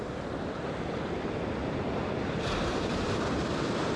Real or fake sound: fake